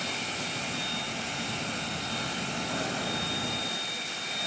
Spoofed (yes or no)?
no